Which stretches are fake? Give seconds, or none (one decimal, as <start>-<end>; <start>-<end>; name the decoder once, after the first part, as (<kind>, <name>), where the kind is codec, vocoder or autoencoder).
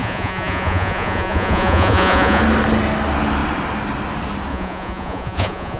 0.0-2.4 (vocoder, Vocos); 4.5-5.8